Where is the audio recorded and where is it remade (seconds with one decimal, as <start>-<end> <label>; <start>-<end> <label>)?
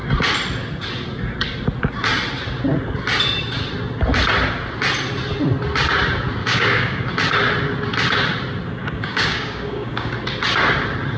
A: 0.0-6.4 recorded; 6.4-7.1 remade; 7.1-8.8 recorded; 8.8-10.1 remade; 10.1-11.2 recorded